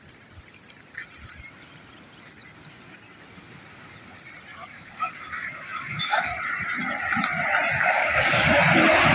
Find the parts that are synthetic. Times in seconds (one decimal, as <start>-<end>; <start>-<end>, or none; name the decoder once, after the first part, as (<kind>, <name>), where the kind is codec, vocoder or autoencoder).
4.5-6.3 (codec, DAC); 7.8-8.5